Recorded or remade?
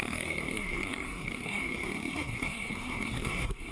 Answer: remade